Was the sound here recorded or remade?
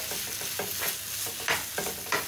recorded